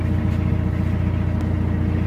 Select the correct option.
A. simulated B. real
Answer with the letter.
B